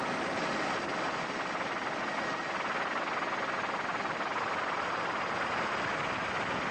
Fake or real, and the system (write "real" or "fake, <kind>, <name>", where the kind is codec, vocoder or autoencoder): real